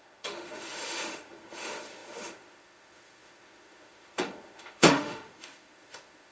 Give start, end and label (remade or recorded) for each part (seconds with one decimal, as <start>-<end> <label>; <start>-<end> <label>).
0.0-6.3 remade